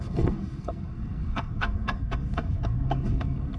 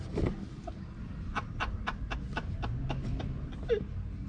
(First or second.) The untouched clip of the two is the second